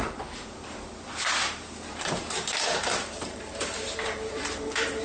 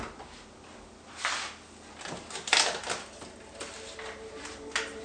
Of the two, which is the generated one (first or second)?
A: first